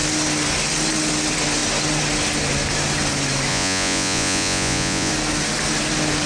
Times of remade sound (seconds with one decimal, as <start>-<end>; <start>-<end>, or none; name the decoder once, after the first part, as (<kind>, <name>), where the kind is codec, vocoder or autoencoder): 3.5-5.1 (vocoder, Vocos)